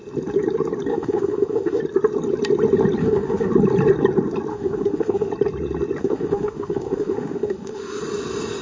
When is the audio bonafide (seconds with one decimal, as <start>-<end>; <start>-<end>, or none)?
0.0-0.9; 1.8-3.0; 3.5-4.5; 5.3-6.0; 8.0-8.6